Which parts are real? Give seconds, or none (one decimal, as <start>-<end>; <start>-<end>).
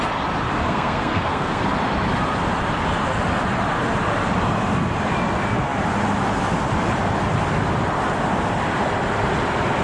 0.0-0.6; 1.6-9.8